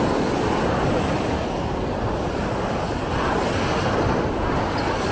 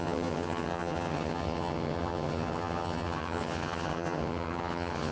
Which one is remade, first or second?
second